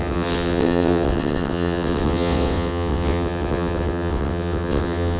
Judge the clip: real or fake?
fake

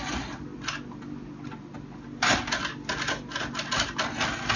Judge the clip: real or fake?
real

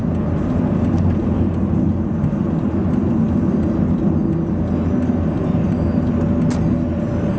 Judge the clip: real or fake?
real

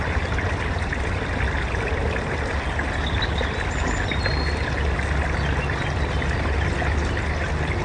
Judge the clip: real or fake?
real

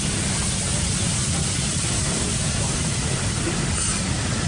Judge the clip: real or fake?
real